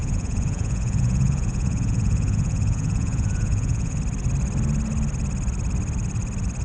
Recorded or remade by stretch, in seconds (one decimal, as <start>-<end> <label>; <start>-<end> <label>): 0.0-4.0 remade; 4.0-6.6 recorded